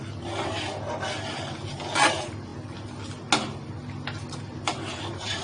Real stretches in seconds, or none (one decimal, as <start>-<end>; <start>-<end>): 0.0-5.4